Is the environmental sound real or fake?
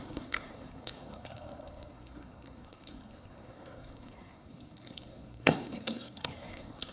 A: fake